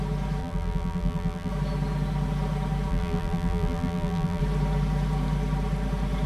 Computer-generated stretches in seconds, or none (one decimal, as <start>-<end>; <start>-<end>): 0.4-1.5; 2.9-4.4